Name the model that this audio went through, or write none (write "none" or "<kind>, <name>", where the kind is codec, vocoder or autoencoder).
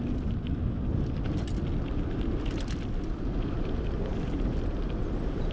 none